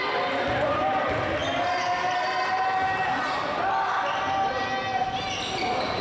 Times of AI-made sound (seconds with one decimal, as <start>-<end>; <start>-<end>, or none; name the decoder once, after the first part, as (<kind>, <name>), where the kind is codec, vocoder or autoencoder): 0.0-1.4 (vocoder, BigVGAN v2); 5.0-6.0